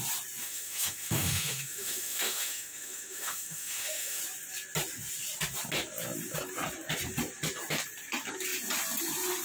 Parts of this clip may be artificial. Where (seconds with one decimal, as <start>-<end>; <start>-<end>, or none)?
0.4-4.2